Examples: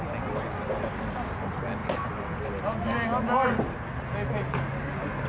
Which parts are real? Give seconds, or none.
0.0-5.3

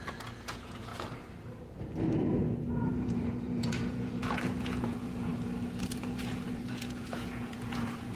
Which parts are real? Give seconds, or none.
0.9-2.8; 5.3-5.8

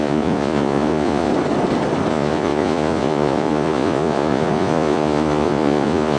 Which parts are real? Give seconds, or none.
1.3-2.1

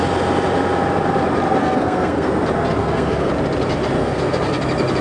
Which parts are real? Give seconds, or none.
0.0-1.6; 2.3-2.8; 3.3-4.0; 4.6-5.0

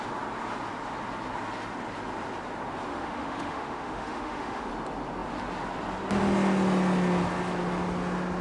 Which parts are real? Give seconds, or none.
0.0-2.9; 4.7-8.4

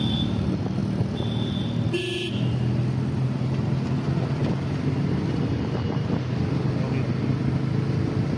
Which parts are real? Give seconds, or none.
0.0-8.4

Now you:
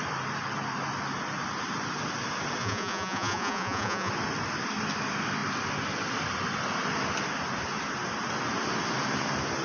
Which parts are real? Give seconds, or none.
0.0-2.6; 4.1-9.6